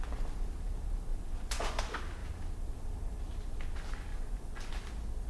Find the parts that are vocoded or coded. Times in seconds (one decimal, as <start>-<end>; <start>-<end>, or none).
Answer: 1.1-1.8; 4.1-4.7